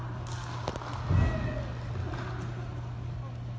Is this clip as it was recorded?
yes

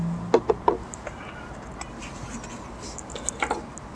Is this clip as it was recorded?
yes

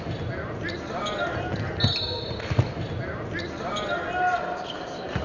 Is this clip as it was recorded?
yes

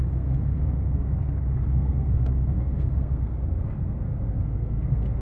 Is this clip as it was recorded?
no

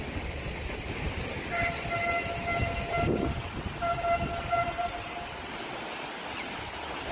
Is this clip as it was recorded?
yes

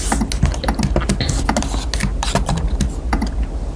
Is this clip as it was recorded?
yes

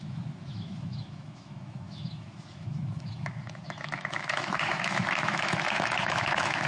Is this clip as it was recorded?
no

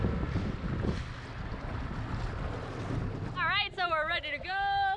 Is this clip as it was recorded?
yes